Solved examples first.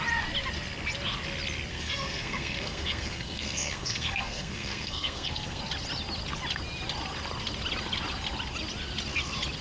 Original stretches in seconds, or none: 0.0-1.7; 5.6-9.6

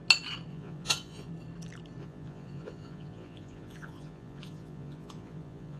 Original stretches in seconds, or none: 0.0-0.5; 1.3-2.0

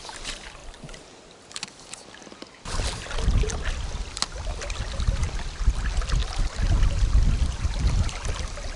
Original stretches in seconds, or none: 0.0-8.8

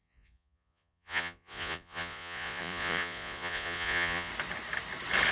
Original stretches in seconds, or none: 4.3-5.3

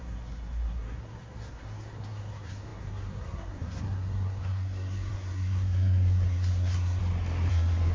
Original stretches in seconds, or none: 7.0-7.5

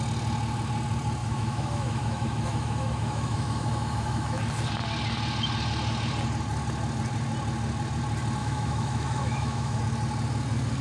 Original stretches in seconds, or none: 0.0-1.2; 4.4-8.4; 9.8-10.8